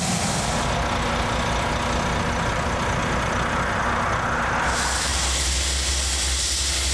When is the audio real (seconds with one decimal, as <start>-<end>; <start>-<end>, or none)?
0.0-6.9